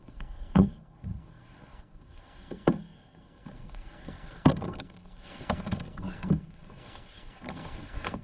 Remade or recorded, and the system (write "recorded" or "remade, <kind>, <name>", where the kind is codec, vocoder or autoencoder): remade, codec, SNAC